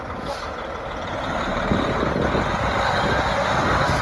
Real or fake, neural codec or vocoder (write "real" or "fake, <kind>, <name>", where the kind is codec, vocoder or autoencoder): real